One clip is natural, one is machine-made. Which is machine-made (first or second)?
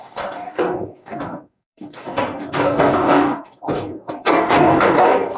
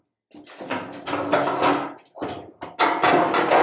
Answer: first